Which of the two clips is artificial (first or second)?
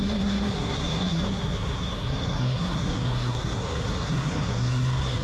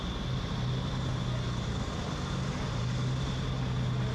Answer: first